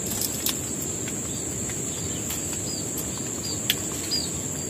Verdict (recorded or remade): recorded